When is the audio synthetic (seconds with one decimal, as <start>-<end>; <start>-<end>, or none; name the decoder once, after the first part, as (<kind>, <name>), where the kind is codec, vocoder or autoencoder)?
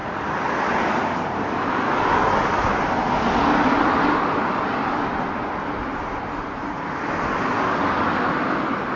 none